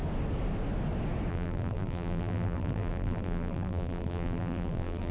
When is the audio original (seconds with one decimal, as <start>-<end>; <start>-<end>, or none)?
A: 0.0-1.3